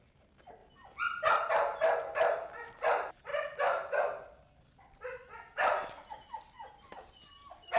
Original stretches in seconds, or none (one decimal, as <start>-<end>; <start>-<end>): 0.0-7.8